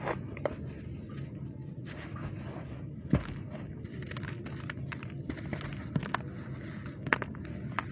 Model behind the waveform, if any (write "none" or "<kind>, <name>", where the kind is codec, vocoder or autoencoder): none